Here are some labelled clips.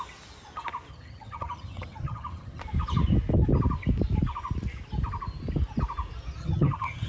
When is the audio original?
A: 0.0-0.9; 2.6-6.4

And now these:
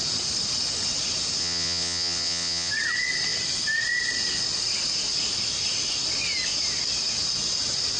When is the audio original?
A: 0.0-1.4; 2.7-8.0

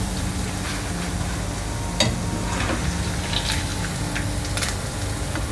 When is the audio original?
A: 0.7-3.2; 3.7-4.8

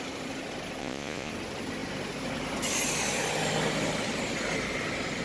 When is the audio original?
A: 0.0-0.8; 1.3-5.2

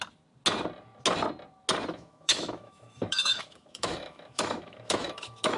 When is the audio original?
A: 0.0-1.9

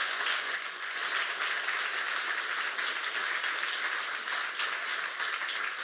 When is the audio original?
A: 1.0-4.5; 4.9-5.8